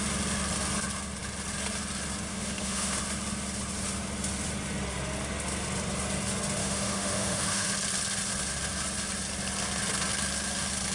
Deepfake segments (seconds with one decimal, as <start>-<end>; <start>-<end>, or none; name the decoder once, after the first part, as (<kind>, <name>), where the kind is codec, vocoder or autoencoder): 2.3-3.0 (autoencoder, DAC-VAE); 6.6-7.7